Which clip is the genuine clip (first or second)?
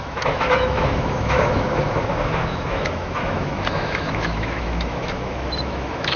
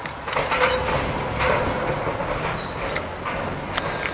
second